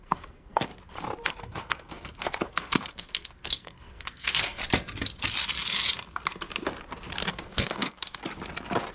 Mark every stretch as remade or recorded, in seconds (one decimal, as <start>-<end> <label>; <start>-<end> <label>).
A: 0.0-0.7 remade; 0.7-1.3 recorded; 1.3-4.6 remade; 4.6-7.3 recorded; 7.3-8.2 remade; 8.2-8.9 recorded

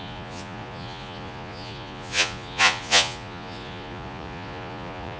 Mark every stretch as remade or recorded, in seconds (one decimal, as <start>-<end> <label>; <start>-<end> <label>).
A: 0.0-5.2 remade